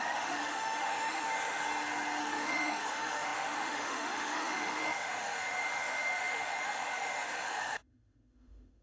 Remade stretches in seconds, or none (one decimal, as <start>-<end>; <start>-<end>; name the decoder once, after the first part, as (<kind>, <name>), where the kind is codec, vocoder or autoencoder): 0.0-1.6 (autoencoder, DAC-VAE); 2.2-8.8

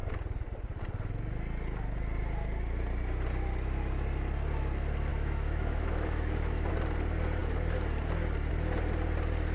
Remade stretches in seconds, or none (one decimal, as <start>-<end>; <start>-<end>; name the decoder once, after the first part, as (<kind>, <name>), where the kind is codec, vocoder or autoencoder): 5.1-6.7 (autoencoder, DAC-VAE)

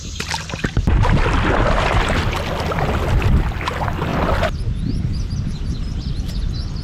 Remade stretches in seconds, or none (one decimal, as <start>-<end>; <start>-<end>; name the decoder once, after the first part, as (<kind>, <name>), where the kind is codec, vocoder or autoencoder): none